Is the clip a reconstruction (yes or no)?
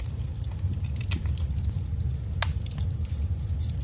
no